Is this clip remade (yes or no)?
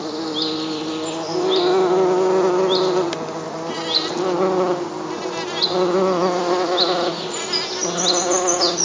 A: no